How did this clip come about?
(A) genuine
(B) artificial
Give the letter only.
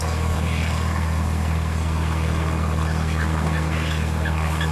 B